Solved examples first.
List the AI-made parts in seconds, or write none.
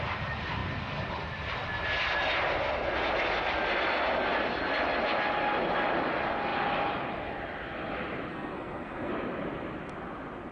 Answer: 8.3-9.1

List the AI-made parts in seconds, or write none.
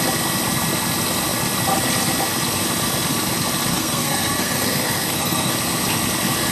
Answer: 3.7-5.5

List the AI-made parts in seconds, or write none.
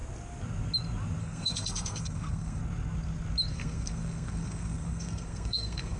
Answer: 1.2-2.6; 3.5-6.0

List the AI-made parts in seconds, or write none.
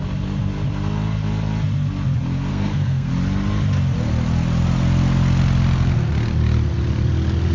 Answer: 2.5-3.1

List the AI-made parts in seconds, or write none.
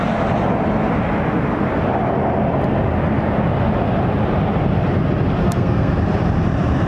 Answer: 5.4-5.9